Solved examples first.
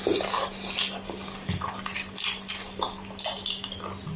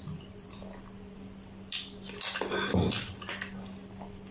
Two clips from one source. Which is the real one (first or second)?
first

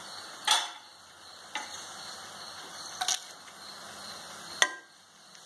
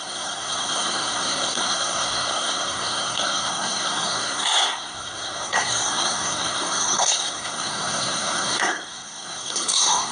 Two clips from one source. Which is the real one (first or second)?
first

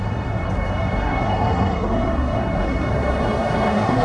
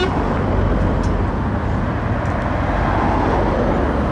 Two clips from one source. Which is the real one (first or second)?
second